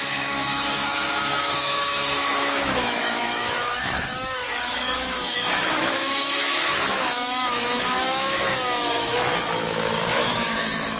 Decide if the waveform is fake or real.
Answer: fake